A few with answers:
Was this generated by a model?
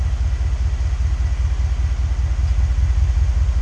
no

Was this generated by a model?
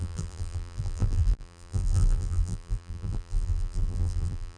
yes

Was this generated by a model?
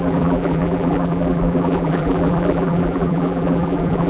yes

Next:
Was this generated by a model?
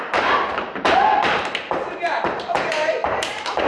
yes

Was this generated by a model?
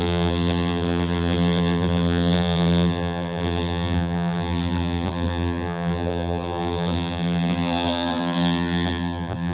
yes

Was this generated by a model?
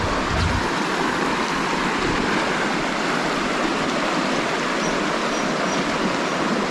no